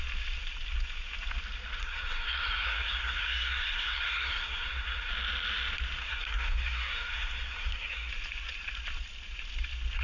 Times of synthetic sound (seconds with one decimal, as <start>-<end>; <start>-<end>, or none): 1.8-5.1; 6.0-8.1